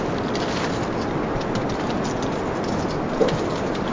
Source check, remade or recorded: recorded